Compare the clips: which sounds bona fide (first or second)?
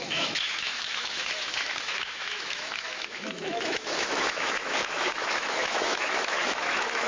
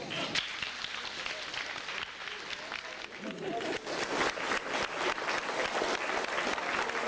second